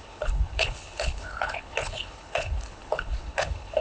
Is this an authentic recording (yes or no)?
no